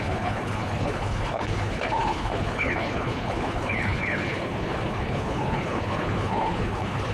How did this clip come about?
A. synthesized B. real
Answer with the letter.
A